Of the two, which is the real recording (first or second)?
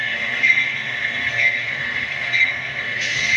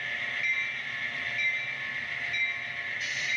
second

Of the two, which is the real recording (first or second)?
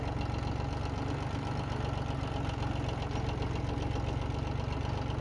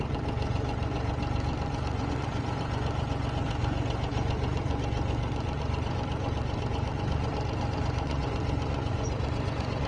first